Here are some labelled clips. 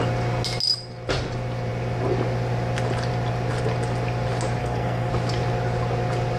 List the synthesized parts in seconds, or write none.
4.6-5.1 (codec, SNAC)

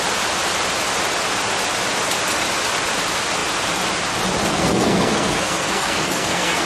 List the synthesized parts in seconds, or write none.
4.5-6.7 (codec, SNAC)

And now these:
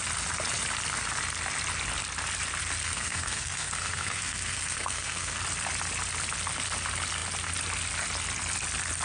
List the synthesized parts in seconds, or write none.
2.8-5.4 (codec, SNAC)

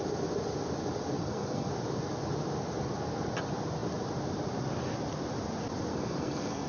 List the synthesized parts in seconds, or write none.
1.2-1.7 (codec, SNAC); 5.9-6.7